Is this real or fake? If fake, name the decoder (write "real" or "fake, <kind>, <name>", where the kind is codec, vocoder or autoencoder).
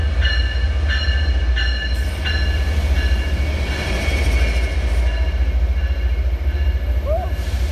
real